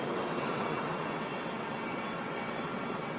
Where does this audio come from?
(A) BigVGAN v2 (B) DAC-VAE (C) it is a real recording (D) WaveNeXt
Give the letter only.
D